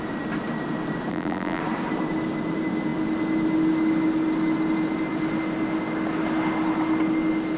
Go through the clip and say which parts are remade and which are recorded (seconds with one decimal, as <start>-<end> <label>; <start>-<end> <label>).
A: 0.0-1.1 recorded; 1.1-1.6 remade; 1.6-7.6 recorded